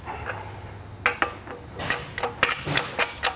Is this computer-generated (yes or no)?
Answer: no